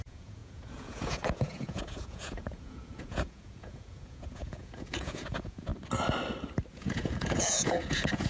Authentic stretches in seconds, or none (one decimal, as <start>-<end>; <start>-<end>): 5.7-6.7